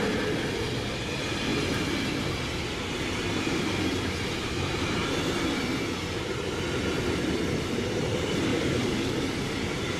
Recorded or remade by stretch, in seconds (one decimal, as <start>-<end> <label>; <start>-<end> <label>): 0.0-8.5 recorded; 8.5-9.4 remade; 9.4-10.0 recorded